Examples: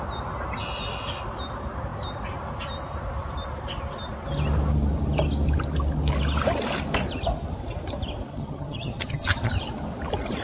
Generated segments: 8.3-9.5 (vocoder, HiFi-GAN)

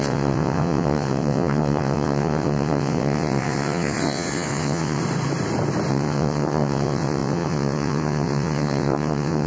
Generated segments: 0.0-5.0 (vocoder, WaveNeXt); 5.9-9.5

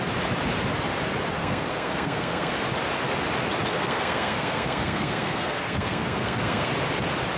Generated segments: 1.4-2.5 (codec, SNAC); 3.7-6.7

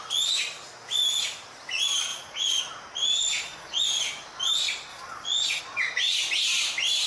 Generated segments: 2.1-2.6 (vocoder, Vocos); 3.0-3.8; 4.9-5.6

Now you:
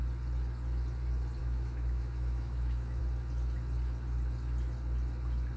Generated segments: 1.4-3.0 (autoencoder, DAC-VAE)